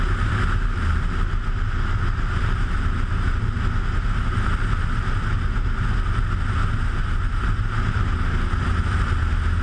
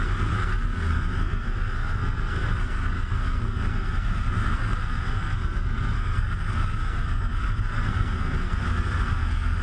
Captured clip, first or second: first